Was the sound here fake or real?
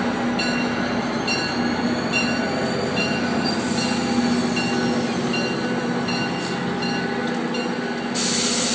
real